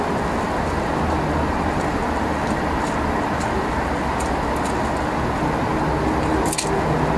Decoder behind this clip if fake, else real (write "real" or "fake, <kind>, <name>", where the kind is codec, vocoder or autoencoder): real